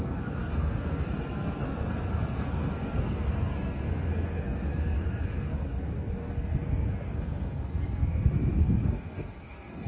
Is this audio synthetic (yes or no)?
yes